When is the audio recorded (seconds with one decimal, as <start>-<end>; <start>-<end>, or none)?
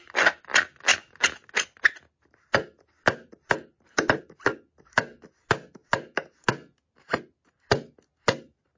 0.0-0.9; 1.8-8.8